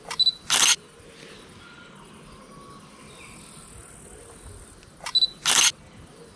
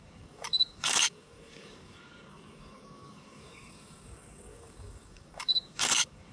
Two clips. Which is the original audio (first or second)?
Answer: first